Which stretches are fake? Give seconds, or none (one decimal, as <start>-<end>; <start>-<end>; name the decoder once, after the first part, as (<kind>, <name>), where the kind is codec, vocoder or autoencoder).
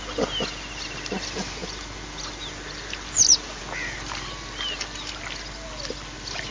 none